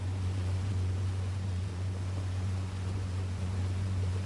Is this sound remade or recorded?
remade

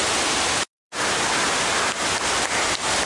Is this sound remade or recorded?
recorded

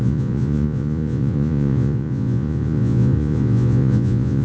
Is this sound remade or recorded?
remade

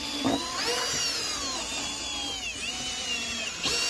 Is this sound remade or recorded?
recorded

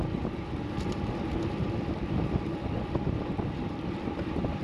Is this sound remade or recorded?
recorded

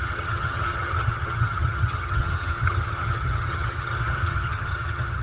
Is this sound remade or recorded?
remade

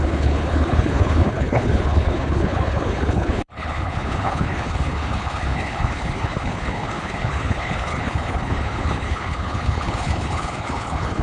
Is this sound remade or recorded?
remade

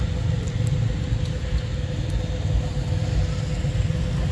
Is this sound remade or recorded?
recorded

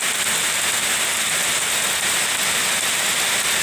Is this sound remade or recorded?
recorded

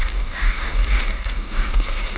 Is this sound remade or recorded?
remade